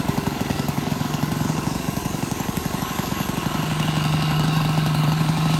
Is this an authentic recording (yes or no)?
no